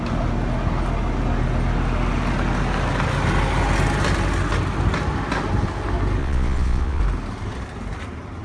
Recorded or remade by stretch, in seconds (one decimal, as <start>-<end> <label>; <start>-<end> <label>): 0.0-6.2 recorded; 6.2-7.0 remade; 7.0-8.4 recorded